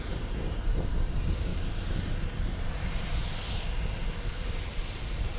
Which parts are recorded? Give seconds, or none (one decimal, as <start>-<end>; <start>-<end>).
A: 1.5-2.5; 3.2-4.3